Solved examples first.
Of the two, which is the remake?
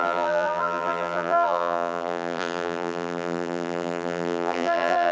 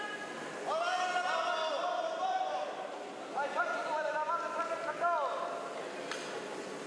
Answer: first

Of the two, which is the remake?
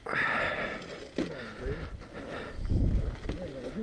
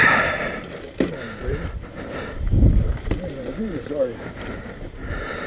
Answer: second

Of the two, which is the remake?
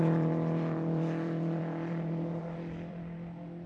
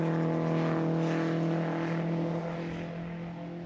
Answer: first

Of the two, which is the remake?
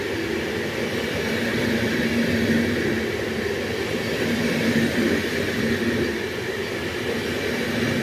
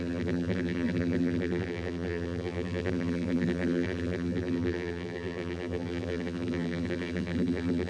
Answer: second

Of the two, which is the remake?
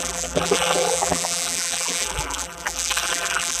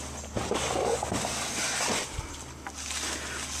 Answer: first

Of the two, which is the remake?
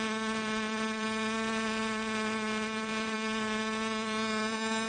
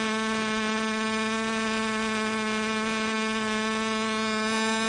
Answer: first